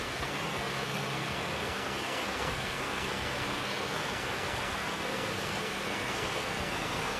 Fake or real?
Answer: fake